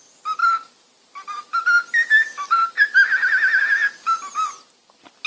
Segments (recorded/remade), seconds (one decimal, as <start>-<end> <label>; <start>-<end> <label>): 0.0-5.3 recorded